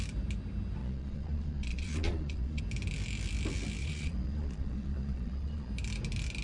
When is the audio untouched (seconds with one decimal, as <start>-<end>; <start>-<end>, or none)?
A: 0.0-0.8; 2.6-3.8; 5.7-6.4